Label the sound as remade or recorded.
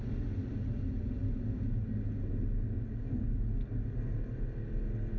recorded